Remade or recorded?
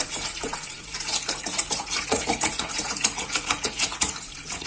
remade